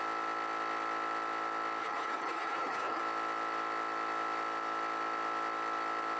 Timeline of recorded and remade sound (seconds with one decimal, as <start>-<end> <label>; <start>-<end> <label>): 0.0-1.8 recorded; 1.8-3.0 remade; 3.0-6.2 recorded